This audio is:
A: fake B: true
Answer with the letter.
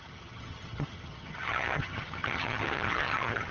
A